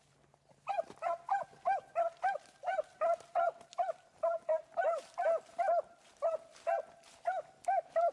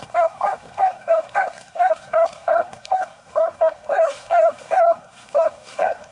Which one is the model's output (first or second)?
second